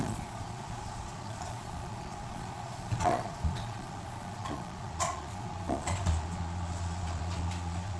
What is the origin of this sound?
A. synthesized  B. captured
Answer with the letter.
A